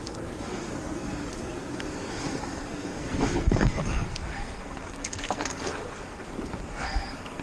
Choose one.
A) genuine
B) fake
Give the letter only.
B